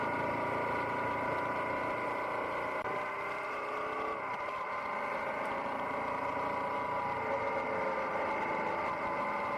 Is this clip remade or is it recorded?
recorded